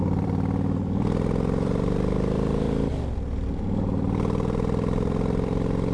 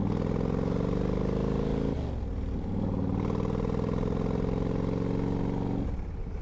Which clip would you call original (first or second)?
second